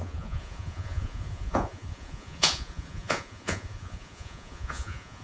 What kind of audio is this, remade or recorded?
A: remade